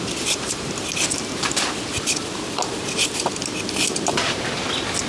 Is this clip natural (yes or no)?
yes